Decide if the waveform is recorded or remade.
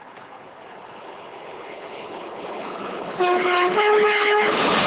remade